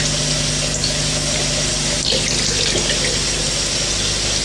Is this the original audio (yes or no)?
yes